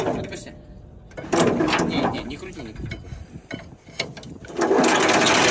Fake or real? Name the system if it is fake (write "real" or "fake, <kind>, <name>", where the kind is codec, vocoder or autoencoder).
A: real